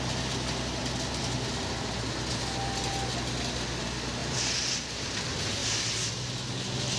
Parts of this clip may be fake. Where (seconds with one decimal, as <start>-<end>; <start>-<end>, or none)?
4.2-5.1